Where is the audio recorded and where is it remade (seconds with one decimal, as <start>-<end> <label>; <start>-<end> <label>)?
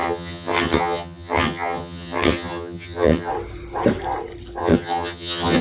0.0-3.3 remade; 3.3-4.6 recorded; 4.6-5.6 remade